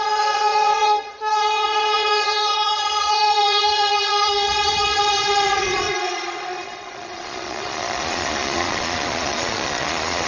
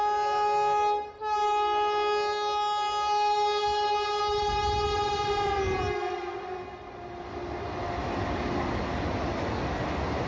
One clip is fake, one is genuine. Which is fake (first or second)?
first